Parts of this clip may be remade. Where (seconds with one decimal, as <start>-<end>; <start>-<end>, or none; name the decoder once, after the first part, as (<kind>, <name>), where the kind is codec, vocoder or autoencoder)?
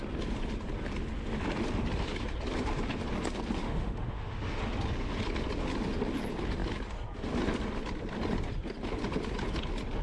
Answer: 3.6-4.6 (autoencoder, DAC-VAE)